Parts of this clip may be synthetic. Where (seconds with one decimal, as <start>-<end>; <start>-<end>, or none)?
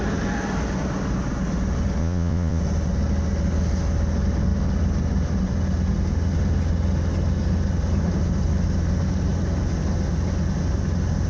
2.0-2.6